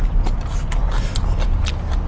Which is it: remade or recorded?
recorded